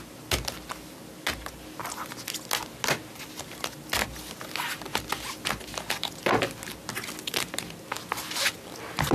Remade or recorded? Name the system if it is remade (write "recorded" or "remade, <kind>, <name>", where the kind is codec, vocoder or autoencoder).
recorded